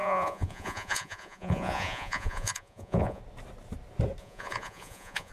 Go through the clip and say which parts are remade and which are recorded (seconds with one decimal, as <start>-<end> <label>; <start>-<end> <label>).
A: 0.0-3.2 remade; 3.2-4.2 recorded; 4.2-5.3 remade